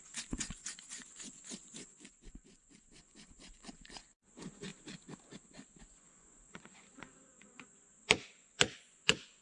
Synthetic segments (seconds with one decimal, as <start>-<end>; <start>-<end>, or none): 0.0-4.7; 5.8-9.4